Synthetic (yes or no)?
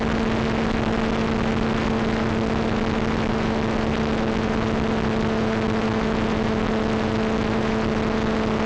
no